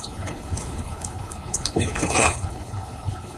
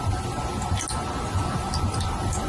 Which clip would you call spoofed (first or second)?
first